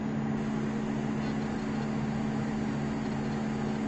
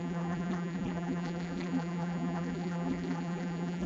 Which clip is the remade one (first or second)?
second